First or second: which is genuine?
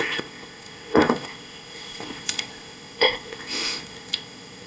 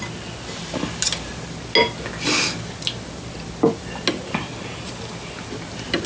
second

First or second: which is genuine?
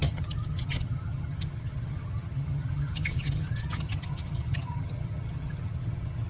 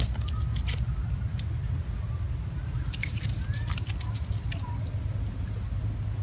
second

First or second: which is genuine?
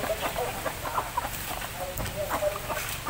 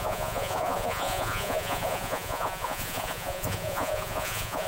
first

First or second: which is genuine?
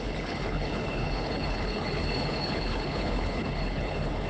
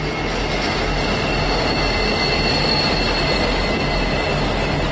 second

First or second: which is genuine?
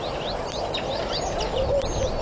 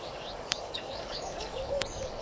first